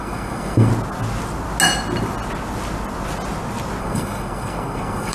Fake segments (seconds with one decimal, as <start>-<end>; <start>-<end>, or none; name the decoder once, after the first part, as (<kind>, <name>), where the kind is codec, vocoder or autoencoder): 0.0-0.7 (codec, SNAC); 3.8-5.1